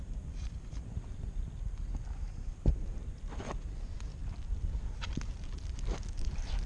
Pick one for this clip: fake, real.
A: real